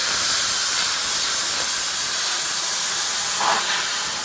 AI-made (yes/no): no